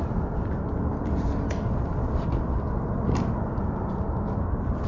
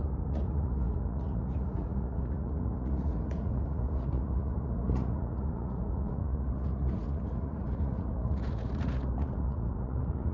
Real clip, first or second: first